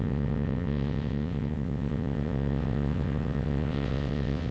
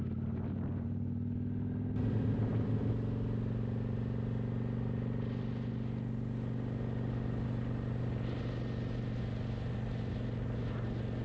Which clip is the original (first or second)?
second